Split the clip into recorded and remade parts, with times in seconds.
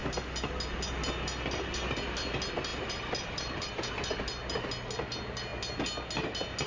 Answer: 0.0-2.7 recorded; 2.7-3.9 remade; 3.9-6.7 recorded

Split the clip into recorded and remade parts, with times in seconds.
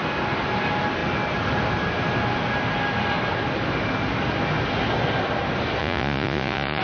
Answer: 0.0-5.8 recorded; 5.8-6.8 remade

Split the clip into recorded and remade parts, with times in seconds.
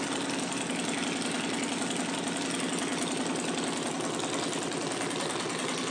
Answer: 0.0-5.9 recorded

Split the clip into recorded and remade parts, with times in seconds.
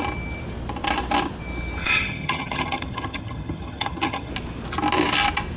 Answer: 0.0-1.8 recorded; 1.8-4.3 remade; 4.3-5.6 recorded